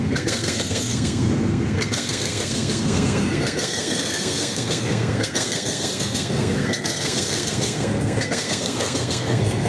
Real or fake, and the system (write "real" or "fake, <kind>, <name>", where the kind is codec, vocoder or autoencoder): fake, codec, SNAC